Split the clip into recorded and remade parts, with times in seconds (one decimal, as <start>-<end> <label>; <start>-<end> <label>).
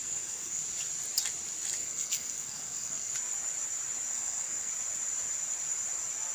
0.0-0.6 remade; 0.6-1.8 recorded; 1.8-3.1 remade; 3.1-4.1 recorded; 4.1-4.7 remade; 4.7-6.3 recorded